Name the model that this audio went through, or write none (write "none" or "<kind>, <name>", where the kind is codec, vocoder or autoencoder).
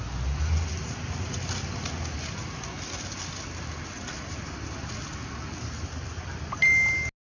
none